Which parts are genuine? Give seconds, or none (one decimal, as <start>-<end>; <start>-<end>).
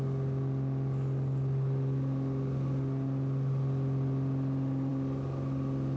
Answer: 0.0-6.0